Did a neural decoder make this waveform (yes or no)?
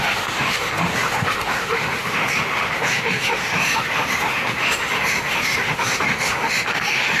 yes